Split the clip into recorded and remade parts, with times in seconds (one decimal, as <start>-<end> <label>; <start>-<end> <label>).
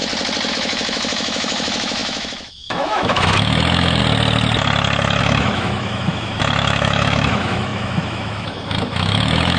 0.0-0.5 recorded; 0.5-4.0 remade; 4.0-5.2 recorded; 5.2-9.6 remade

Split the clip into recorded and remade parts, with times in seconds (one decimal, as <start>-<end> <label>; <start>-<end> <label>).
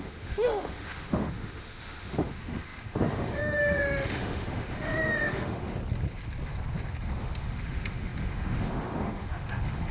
0.0-5.7 remade; 5.7-7.2 recorded; 7.2-9.9 remade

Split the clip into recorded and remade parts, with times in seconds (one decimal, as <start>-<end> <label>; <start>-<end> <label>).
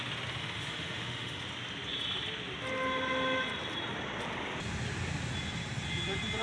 0.0-0.4 recorded; 0.4-1.4 remade; 1.4-6.4 recorded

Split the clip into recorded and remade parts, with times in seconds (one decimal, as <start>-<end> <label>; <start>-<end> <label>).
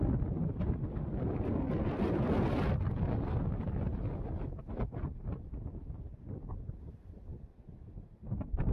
0.0-8.7 recorded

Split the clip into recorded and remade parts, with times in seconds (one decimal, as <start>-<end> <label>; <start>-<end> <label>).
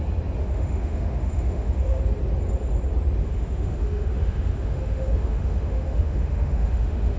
0.0-0.4 recorded; 0.4-2.0 remade; 2.0-3.2 recorded; 3.2-7.2 remade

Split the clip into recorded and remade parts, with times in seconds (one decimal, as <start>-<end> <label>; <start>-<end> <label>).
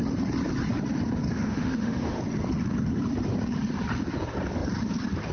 0.0-1.3 recorded; 1.3-2.2 remade; 2.2-5.3 recorded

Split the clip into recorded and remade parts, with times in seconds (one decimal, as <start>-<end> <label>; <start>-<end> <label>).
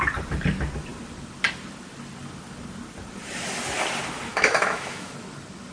0.0-4.3 recorded; 4.3-5.1 remade; 5.1-5.7 recorded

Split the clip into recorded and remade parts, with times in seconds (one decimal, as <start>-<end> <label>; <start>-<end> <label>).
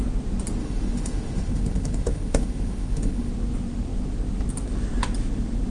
0.0-0.6 recorded; 0.6-3.3 remade; 3.3-5.7 recorded